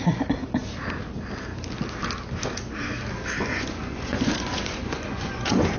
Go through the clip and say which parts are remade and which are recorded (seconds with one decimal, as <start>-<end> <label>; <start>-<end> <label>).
0.0-3.5 recorded; 3.5-5.8 remade